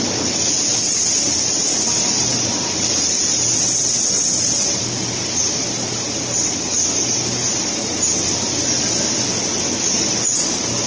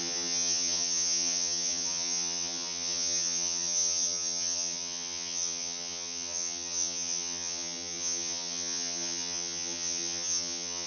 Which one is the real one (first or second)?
first